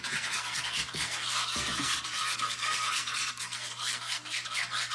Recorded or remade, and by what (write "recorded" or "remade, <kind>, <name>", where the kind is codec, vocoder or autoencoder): remade, codec, SNAC